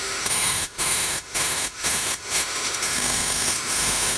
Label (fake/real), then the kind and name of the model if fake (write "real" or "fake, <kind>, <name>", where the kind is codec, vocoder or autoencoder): fake, autoencoder, DAC-VAE